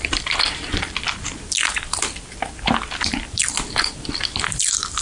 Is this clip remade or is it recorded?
remade